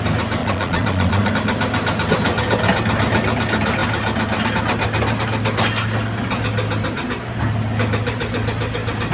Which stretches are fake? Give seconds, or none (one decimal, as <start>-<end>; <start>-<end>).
0.4-1.3

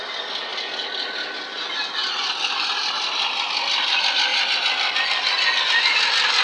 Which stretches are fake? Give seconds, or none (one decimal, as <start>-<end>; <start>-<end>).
none

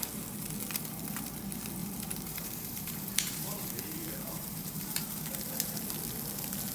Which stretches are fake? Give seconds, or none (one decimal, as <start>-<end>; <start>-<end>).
1.8-5.8

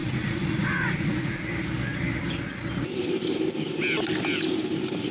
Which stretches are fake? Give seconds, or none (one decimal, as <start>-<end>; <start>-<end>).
0.0-1.4

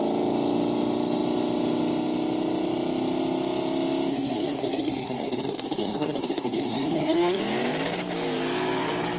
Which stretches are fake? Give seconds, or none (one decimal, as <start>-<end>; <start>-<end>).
4.1-7.4

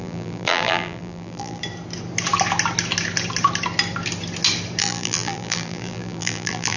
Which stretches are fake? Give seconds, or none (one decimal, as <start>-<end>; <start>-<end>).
0.0-1.6; 4.8-6.8

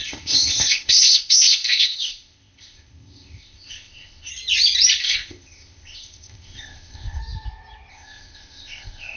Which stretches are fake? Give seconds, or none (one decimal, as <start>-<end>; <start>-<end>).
0.0-4.3; 5.0-7.2; 7.9-9.2

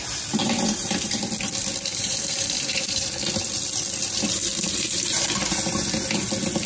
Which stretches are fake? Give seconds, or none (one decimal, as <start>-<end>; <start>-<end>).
0.4-1.1; 1.9-3.1; 4.4-5.2